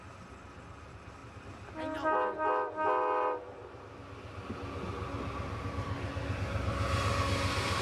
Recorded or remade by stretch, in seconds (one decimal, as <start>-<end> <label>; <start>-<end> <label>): 0.0-7.8 recorded